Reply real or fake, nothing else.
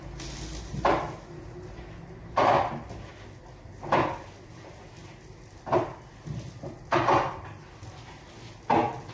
real